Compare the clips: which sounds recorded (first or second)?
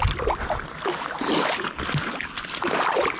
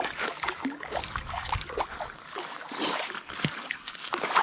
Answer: first